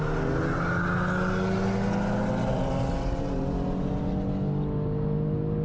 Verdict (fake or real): real